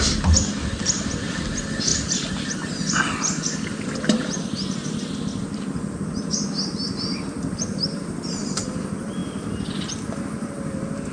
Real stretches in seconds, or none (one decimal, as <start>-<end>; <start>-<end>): 0.0-11.1